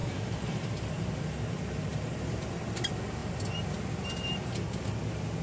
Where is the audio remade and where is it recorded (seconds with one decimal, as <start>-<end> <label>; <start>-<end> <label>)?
0.0-0.6 remade; 0.6-1.9 recorded; 1.9-2.6 remade; 2.6-5.4 recorded